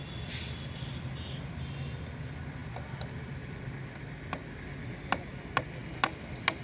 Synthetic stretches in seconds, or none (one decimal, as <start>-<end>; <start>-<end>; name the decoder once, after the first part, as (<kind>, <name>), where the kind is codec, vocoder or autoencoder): none